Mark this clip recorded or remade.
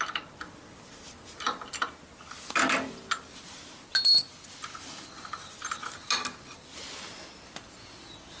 recorded